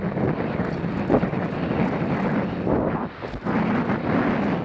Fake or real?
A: real